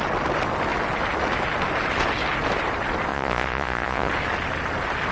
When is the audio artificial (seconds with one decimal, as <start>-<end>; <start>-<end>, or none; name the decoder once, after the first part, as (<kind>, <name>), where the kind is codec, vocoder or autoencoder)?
3.1-4.1 (vocoder, Vocos)